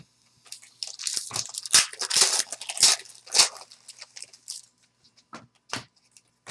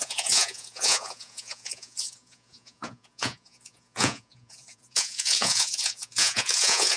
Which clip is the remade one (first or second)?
second